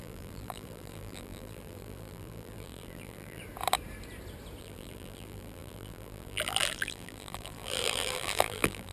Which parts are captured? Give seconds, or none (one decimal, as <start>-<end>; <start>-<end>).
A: 3.4-4.6